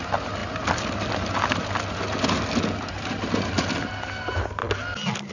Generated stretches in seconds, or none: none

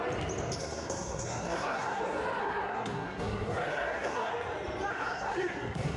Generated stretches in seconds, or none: 0.6-2.0; 2.4-4.3; 4.9-6.0

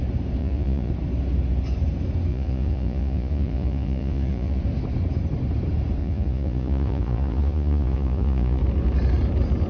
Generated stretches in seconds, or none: 0.4-0.9; 2.3-4.6; 6.0-8.6

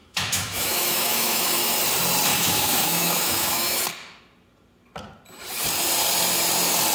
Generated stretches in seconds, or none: 0.0-1.6; 2.3-3.8

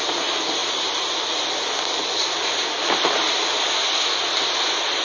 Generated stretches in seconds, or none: none

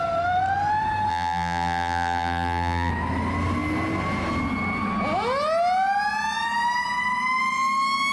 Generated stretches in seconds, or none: 1.1-2.9